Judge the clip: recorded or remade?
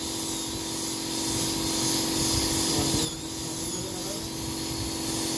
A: recorded